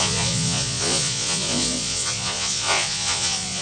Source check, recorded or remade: remade